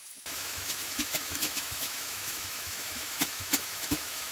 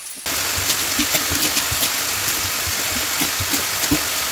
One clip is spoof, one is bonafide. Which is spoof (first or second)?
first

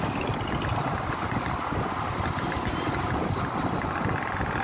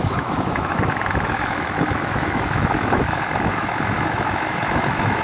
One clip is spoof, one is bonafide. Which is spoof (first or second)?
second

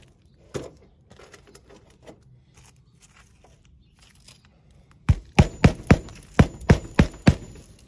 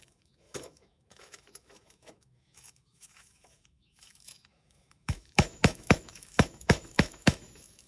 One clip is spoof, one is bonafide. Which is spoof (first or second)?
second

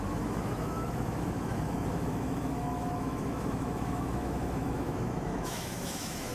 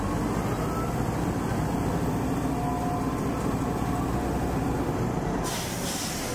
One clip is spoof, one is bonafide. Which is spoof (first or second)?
first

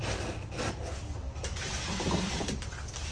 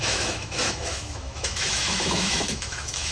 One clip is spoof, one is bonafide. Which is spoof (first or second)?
second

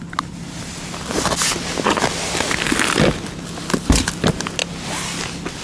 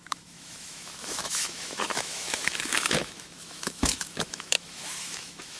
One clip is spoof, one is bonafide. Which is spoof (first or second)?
second